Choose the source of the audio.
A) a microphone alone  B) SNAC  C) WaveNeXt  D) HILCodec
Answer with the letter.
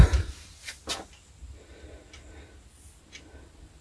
A